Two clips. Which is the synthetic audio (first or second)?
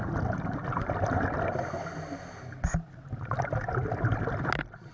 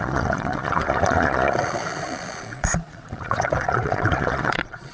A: second